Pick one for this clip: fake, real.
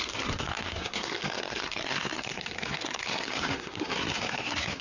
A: fake